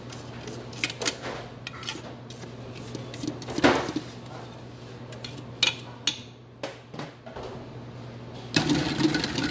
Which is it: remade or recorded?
recorded